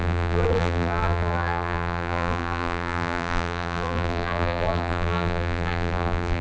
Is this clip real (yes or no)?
no